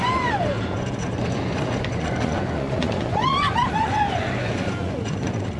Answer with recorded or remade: remade